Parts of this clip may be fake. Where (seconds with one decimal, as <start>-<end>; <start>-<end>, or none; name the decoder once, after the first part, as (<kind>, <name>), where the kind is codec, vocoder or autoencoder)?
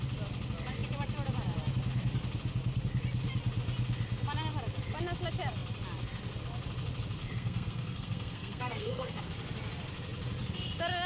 7.2-9.2 (codec, SNAC)